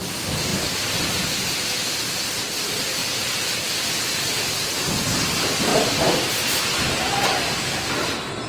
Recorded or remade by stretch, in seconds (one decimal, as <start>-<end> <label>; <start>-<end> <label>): 0.0-8.5 recorded